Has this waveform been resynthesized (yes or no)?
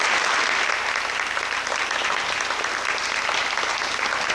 no